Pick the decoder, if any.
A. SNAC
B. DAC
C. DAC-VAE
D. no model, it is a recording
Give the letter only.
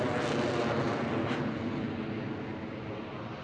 D